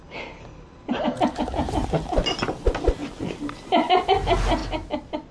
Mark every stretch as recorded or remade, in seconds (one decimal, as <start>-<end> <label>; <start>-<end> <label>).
0.0-5.3 recorded